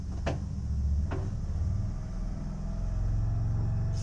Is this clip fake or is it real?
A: real